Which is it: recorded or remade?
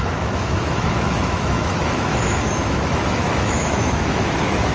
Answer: remade